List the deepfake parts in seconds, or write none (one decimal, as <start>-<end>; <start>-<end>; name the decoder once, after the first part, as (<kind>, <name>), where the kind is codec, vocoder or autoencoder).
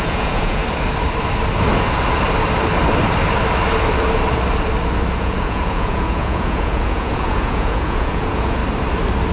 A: 0.0-0.6 (vocoder, Vocos); 5.2-8.6